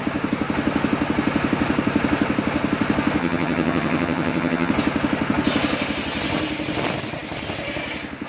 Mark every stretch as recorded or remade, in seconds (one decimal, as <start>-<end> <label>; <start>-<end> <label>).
0.0-3.2 recorded; 3.2-4.7 remade; 4.7-8.3 recorded